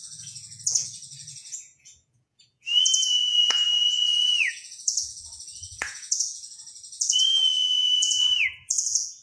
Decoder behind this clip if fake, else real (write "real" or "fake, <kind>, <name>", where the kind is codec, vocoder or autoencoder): fake, vocoder, Vocos